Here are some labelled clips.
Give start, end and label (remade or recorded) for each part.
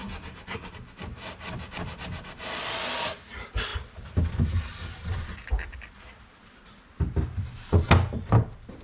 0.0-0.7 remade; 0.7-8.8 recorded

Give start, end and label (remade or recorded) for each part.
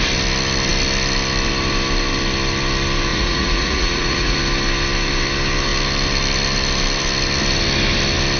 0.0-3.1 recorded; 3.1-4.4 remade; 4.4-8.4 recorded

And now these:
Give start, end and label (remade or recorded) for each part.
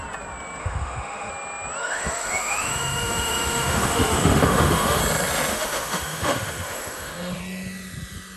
0.0-0.6 recorded; 0.6-1.3 remade; 1.3-1.8 recorded; 1.8-5.0 remade; 5.0-5.5 recorded; 5.5-7.4 remade; 7.4-8.4 recorded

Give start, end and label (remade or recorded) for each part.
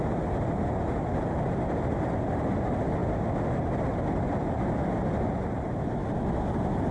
0.0-6.9 recorded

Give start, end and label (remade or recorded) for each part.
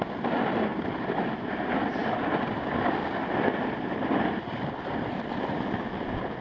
0.0-6.4 recorded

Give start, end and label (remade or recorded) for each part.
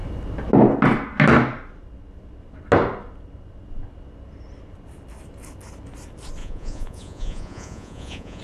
0.0-6.4 recorded; 6.4-8.4 remade